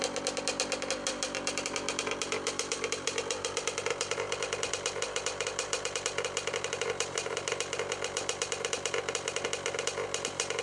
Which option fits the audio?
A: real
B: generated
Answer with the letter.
A